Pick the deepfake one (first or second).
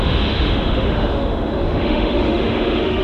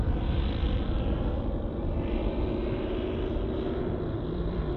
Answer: first